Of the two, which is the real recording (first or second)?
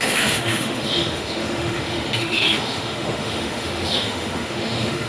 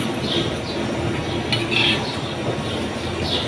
second